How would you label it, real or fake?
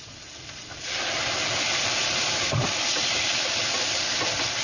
real